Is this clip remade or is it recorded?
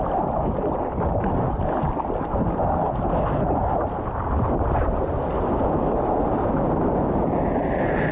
recorded